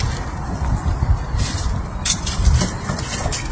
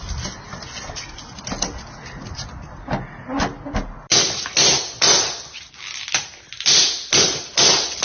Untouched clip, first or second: second